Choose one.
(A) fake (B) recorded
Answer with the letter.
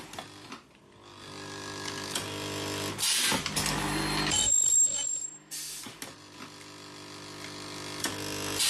B